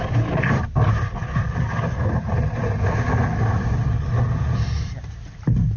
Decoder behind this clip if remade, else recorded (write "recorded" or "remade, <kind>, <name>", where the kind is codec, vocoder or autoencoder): recorded